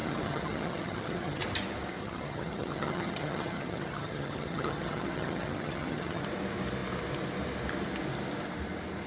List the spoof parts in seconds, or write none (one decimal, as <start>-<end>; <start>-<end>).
0.0-1.4; 2.0-6.2